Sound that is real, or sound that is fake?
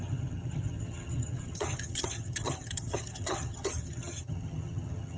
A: fake